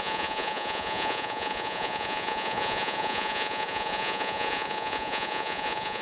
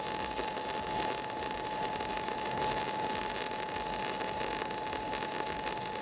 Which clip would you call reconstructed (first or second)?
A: first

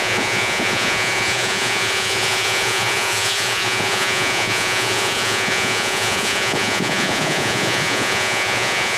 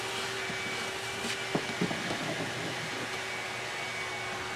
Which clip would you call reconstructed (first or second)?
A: first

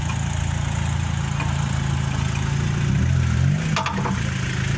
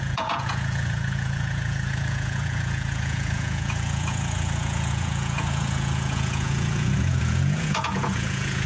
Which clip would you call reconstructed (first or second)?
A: second